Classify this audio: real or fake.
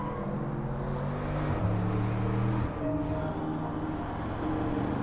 real